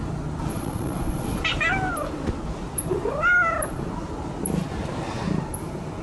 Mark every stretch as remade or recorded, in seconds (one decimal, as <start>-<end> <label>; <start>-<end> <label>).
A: 0.0-0.5 recorded; 0.5-1.4 remade; 1.4-6.0 recorded